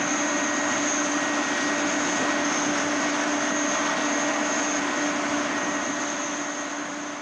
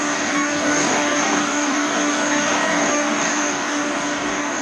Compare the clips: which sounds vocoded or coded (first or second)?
second